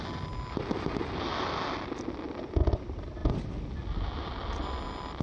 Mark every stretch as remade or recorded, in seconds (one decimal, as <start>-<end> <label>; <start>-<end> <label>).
0.0-5.2 recorded